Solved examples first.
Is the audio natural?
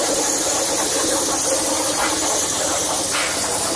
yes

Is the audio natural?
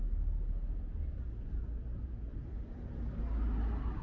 yes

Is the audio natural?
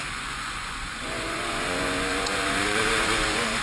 no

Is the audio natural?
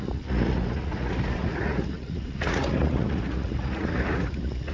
no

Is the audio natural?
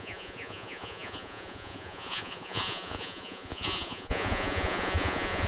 no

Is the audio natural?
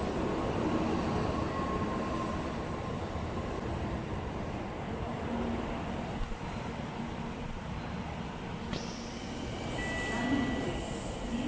yes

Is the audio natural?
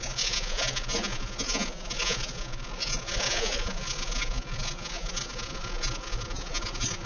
no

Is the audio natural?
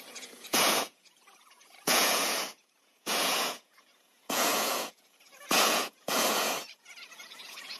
no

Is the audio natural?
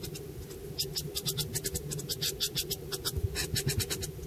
yes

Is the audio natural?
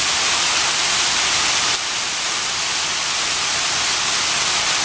yes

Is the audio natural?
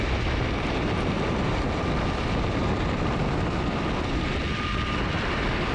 yes